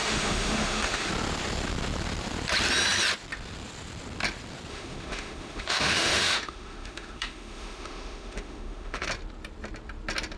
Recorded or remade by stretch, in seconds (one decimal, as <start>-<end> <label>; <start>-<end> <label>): 0.0-1.1 remade; 1.1-4.7 recorded; 4.7-9.1 remade; 9.1-10.4 recorded